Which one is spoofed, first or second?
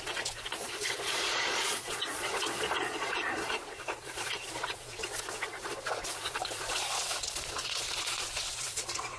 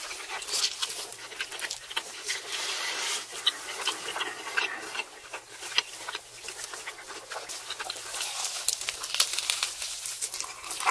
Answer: first